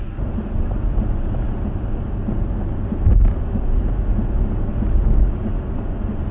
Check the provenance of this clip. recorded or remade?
recorded